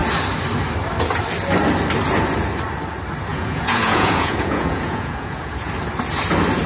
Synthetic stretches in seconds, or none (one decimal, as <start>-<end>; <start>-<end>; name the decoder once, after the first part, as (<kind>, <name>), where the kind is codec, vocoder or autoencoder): 3.3-5.7 (vocoder, Vocos)